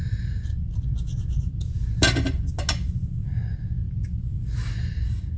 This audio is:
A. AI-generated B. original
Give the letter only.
B